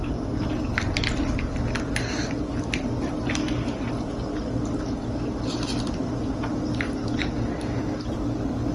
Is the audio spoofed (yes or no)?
no